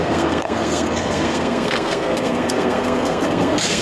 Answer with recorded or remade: remade